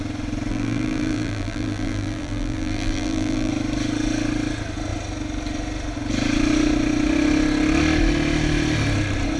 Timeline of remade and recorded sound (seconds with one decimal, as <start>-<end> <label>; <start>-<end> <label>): 0.0-0.5 recorded; 0.5-3.5 remade; 3.5-9.4 recorded